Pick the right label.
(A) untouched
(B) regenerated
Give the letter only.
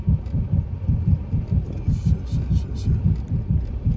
A